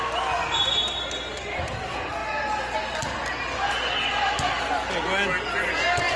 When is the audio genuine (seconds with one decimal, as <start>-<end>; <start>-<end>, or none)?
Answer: 0.0-6.2